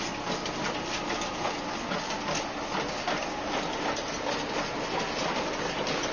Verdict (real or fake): real